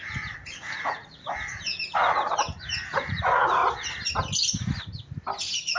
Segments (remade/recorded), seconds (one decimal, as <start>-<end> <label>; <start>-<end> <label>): 0.0-2.2 remade; 2.2-2.9 recorded; 2.9-3.6 remade; 3.6-5.8 recorded